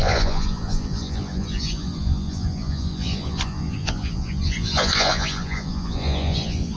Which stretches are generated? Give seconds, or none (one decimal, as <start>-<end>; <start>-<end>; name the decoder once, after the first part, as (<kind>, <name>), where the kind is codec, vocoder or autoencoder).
0.0-6.8 (vocoder, Vocos)